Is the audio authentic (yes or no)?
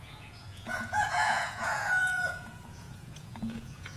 no